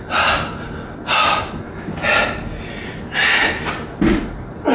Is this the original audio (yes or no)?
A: yes